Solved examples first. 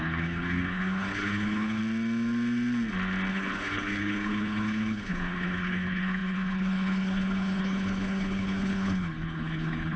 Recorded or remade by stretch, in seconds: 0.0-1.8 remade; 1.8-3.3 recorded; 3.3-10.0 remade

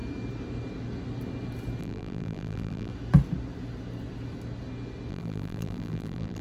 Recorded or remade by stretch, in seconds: 0.0-1.8 recorded; 1.8-2.9 remade; 2.9-5.1 recorded; 5.1-6.4 remade

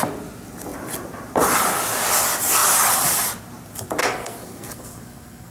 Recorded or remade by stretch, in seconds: 0.0-4.0 recorded; 4.0-5.5 remade

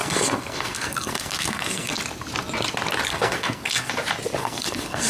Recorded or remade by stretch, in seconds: 0.0-2.0 remade; 2.0-3.1 recorded; 3.1-3.9 remade; 3.9-4.4 recorded; 4.4-5.1 remade

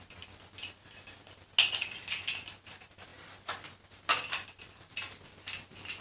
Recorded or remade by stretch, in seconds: 0.0-6.0 recorded

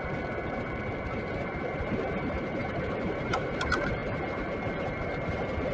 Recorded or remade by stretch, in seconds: 0.0-5.7 remade

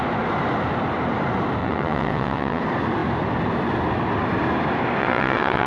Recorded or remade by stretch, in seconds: 0.0-1.6 recorded; 1.6-2.6 remade; 2.6-5.0 recorded; 5.0-5.7 remade